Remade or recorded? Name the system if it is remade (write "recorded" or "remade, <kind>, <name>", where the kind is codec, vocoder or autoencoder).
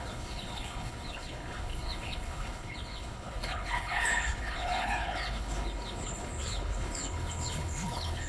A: remade, codec, HILCodec